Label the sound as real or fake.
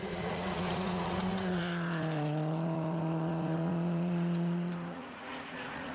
fake